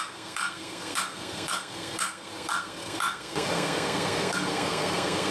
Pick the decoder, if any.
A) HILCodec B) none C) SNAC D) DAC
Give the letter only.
C